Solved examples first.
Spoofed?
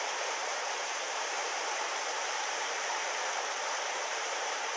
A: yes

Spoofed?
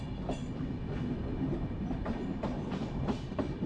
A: no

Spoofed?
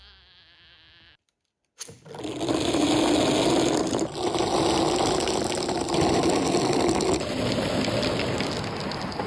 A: no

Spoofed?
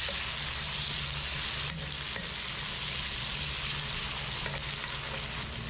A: no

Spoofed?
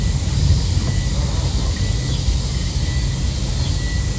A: no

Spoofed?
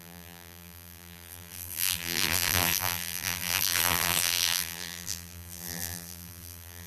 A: yes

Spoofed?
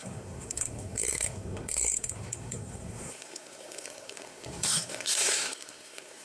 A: yes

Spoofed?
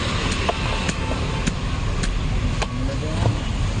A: no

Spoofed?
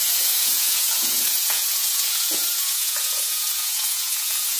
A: yes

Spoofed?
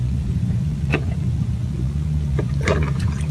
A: yes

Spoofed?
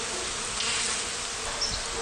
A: no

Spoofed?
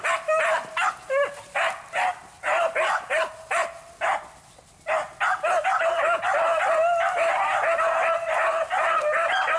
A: no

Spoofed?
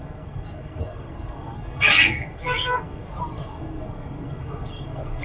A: yes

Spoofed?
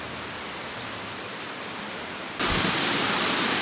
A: no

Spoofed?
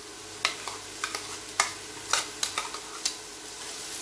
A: no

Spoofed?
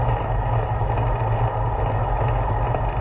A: no